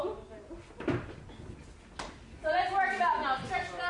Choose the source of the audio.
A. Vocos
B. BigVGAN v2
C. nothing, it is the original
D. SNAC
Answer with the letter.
C